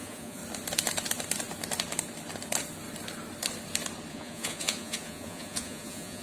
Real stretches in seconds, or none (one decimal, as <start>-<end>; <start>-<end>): 0.4-4.1